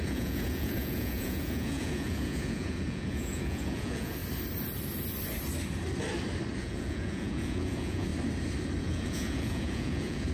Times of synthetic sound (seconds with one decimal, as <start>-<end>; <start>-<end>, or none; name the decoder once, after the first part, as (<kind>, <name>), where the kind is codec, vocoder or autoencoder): 0.0-4.2 (vocoder, Vocos); 6.6-8.1; 8.8-10.3